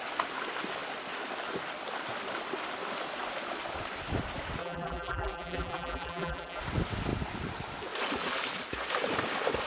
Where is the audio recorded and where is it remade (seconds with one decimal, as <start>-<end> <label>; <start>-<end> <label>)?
0.0-4.6 recorded; 4.6-6.6 remade; 6.6-9.7 recorded